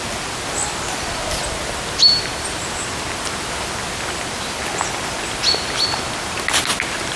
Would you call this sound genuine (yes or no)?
yes